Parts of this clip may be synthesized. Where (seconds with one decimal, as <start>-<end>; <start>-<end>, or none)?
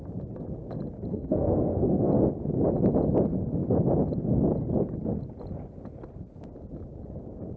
1.1-2.1